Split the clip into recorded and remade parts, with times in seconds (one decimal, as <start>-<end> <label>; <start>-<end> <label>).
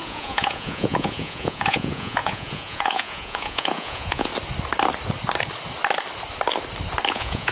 0.0-4.3 remade; 4.3-7.1 recorded; 7.1-7.5 remade